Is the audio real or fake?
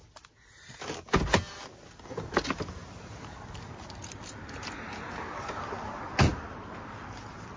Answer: real